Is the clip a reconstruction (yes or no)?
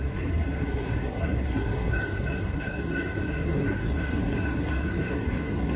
yes